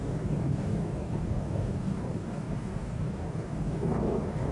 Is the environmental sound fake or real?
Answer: fake